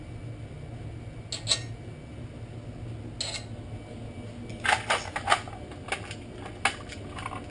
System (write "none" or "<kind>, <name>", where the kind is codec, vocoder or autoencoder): none